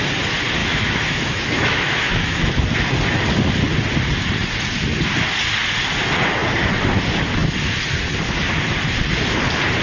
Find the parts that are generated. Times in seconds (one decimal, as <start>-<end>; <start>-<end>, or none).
0.6-2.5